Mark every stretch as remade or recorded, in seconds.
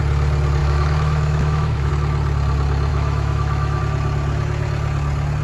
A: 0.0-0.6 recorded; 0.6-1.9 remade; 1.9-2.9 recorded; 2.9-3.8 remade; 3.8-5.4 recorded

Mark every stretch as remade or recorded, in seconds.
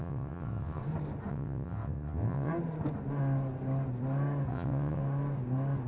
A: 0.0-0.8 remade; 0.8-1.3 recorded; 1.3-2.5 remade; 2.5-4.5 recorded; 4.5-5.0 remade; 5.0-5.9 recorded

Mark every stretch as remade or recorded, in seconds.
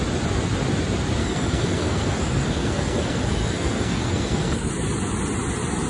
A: 0.0-1.2 recorded; 1.2-4.7 remade; 4.7-5.9 recorded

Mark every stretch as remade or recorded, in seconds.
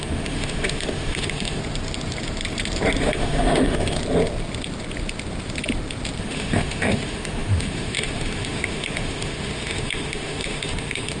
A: 0.0-1.6 remade; 1.6-3.0 recorded; 3.0-4.0 remade; 4.0-6.2 recorded; 6.2-11.2 remade